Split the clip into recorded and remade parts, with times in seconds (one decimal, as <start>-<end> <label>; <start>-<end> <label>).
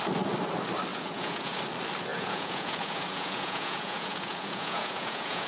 0.0-0.9 recorded; 0.9-1.6 remade; 1.6-2.1 recorded; 2.1-5.5 remade